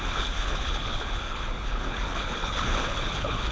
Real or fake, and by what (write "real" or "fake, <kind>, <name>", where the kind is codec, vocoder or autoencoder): fake, codec, HILCodec